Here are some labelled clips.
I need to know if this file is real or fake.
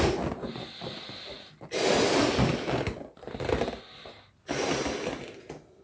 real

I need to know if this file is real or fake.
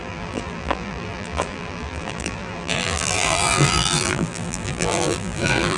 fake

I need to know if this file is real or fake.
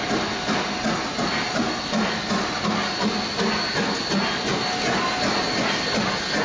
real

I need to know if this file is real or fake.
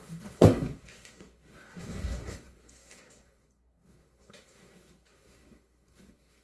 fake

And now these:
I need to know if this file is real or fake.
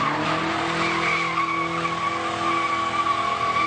real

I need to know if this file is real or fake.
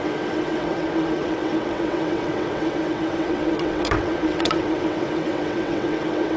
fake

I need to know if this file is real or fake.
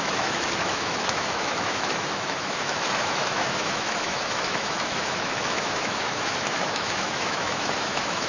fake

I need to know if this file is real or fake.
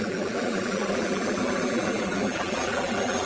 fake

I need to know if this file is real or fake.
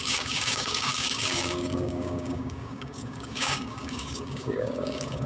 fake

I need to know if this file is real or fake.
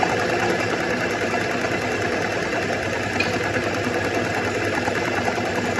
real